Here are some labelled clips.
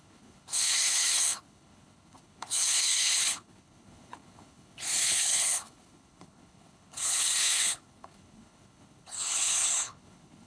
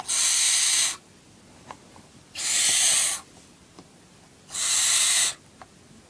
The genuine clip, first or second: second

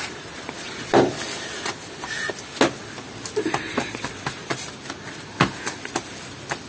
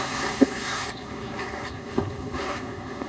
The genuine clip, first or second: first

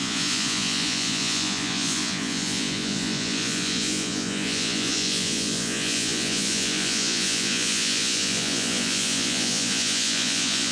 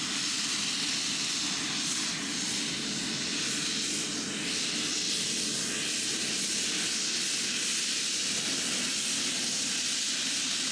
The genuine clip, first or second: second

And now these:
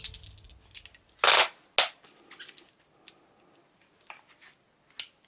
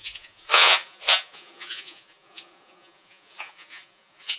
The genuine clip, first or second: first